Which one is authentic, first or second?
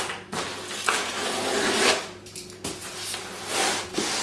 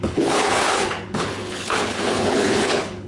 first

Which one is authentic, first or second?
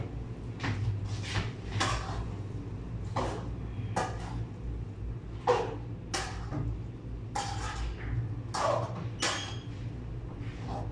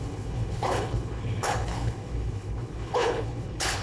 first